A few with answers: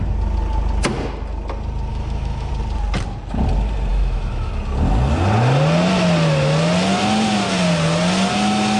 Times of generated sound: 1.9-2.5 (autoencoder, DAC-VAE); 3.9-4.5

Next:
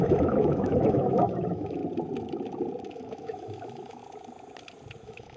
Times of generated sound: 0.0-1.8 (autoencoder, DAC-VAE); 2.9-4.0; 5.0-5.4

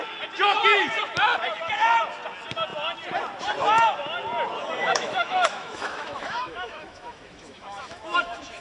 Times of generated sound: 4.8-8.6 (autoencoder, DAC-VAE)

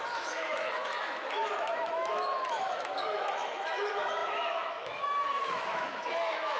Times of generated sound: 0.0-6.6 (autoencoder, DAC-VAE)